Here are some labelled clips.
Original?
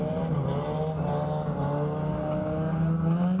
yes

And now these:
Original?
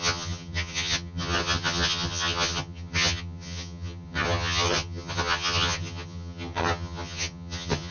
no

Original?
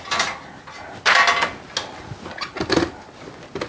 yes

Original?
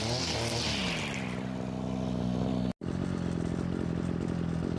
yes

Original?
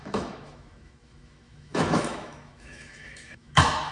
no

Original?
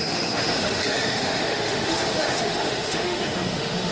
no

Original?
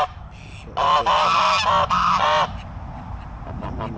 yes